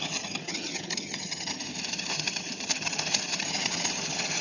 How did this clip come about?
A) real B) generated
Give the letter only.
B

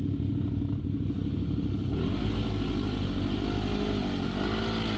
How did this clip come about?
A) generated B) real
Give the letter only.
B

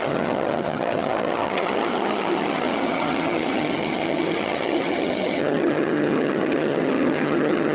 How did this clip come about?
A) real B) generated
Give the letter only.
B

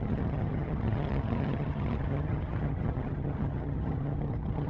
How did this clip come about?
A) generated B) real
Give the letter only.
A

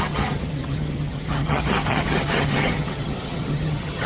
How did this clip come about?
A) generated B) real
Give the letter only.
A